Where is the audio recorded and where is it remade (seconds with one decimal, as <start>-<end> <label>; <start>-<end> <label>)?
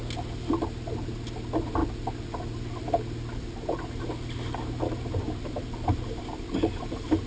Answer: 0.0-7.3 recorded